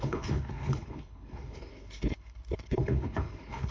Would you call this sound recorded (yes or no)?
no